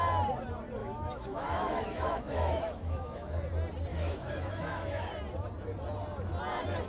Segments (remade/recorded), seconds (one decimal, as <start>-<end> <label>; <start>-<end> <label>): 0.0-0.8 recorded; 0.8-3.4 remade; 3.4-3.9 recorded; 3.9-5.1 remade; 5.1-6.9 recorded